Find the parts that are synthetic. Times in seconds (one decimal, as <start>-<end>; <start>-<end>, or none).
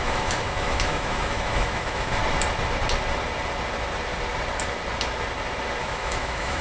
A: 0.0-2.2; 5.8-6.6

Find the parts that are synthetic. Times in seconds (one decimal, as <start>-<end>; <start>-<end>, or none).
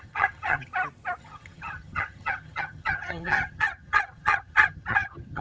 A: 0.0-0.7; 1.2-5.4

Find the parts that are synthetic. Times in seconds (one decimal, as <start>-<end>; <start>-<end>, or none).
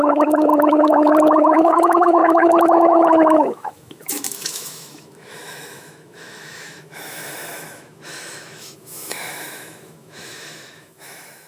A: 0.0-11.5